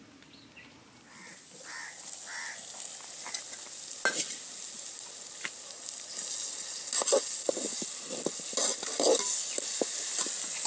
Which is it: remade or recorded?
recorded